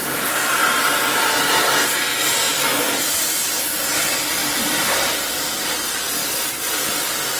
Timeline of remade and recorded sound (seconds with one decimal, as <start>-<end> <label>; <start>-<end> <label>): 0.0-0.8 remade; 0.8-2.1 recorded; 2.1-3.6 remade; 3.6-4.4 recorded; 4.4-5.6 remade; 5.6-6.2 recorded; 6.2-6.7 remade; 6.7-7.4 recorded